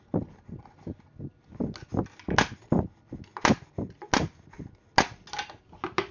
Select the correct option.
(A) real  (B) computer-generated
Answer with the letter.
A